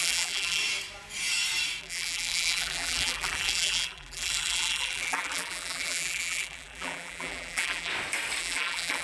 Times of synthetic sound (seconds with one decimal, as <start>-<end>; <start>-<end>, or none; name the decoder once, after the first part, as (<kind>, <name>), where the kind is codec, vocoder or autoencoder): 0.0-0.6 (vocoder, BigVGAN v2); 1.8-7.9; 8.4-9.0